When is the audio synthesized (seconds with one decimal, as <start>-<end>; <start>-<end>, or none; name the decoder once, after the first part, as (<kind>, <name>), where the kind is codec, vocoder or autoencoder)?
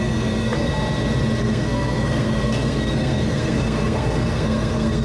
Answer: 0.0-0.7 (codec, SNAC); 1.4-5.0